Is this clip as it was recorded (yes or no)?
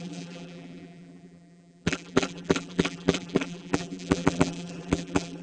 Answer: no